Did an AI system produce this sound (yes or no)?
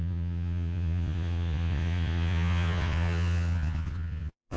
yes